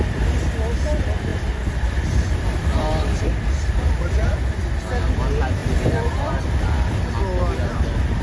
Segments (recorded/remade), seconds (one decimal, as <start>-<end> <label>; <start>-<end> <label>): 0.0-1.3 recorded; 1.3-3.9 remade; 3.9-5.6 recorded; 5.6-6.5 remade; 6.5-8.2 recorded